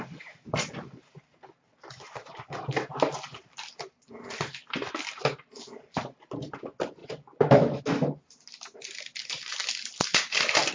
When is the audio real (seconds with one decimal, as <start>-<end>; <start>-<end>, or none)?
0.0-7.0; 7.8-10.7